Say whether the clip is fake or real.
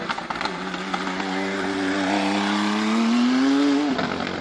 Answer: real